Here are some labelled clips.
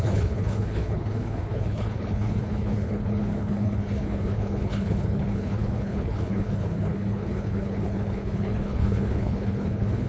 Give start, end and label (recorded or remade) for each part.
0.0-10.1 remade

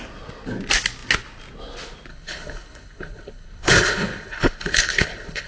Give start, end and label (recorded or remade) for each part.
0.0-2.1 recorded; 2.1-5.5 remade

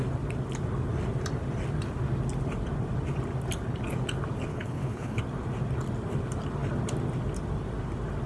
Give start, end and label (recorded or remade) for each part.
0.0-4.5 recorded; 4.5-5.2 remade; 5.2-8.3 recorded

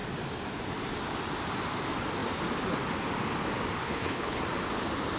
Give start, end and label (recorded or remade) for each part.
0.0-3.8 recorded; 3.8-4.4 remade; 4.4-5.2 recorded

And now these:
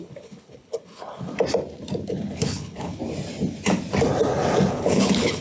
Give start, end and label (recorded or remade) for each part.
0.0-1.3 remade; 1.3-2.1 recorded; 2.1-3.0 remade; 3.0-4.7 recorded; 4.7-5.4 remade

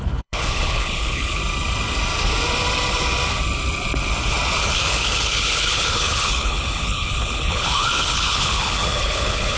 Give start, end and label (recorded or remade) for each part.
0.0-1.4 remade; 1.4-4.6 recorded; 4.6-9.6 remade

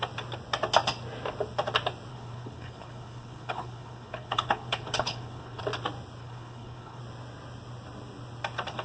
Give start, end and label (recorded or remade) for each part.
0.0-2.1 recorded; 2.1-5.6 remade; 5.6-6.2 recorded; 6.2-7.0 remade; 7.0-8.8 recorded

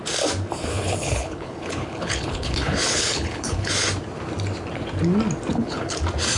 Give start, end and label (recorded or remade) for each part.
0.0-0.7 recorded; 0.7-3.7 remade; 3.7-5.5 recorded; 5.5-6.0 remade; 6.0-6.4 recorded